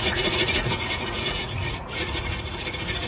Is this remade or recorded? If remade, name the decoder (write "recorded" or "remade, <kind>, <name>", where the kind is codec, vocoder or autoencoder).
remade, vocoder, Vocos